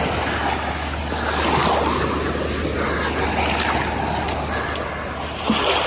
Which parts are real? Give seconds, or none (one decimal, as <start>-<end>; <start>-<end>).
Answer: 0.0-5.9